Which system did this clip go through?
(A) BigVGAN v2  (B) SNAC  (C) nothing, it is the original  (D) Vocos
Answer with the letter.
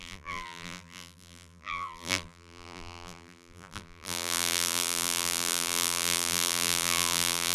A